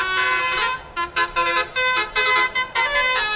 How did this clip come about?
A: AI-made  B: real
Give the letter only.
B